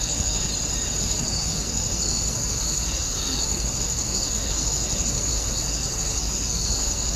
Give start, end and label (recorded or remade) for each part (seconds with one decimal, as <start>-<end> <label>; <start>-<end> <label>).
0.0-0.5 remade; 0.5-1.0 recorded; 1.0-7.2 remade